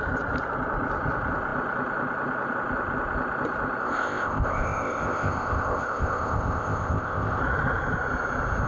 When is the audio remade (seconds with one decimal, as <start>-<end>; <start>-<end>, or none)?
3.8-7.4